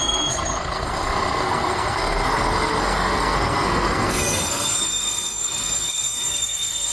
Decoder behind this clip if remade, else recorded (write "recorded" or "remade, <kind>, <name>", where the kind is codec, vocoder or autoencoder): remade, codec, SNAC